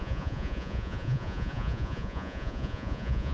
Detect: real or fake fake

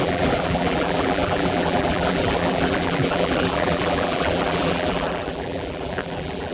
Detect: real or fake fake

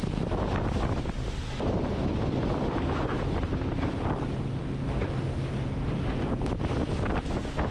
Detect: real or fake real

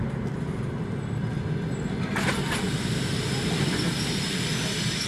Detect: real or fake real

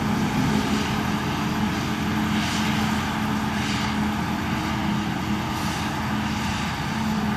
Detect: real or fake real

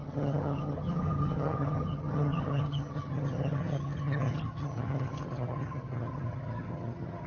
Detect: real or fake fake